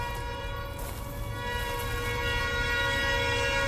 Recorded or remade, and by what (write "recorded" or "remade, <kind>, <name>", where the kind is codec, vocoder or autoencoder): recorded